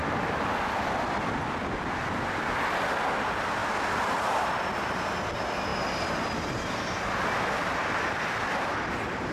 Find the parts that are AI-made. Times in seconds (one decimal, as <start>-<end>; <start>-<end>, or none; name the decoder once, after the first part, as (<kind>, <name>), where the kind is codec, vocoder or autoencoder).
none